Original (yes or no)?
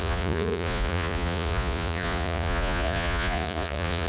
no